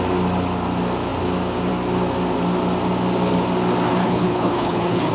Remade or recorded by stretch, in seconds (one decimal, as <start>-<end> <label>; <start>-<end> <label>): 0.0-4.0 recorded; 4.0-5.1 remade